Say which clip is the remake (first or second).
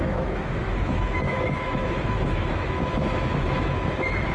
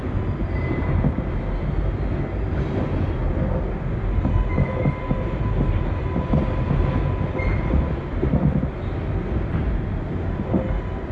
first